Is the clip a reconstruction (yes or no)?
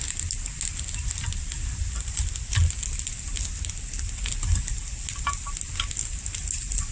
no